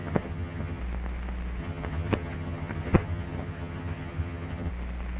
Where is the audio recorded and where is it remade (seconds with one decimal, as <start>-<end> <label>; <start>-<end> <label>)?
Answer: 0.0-0.8 remade; 0.8-1.6 recorded; 1.6-4.7 remade; 4.7-5.2 recorded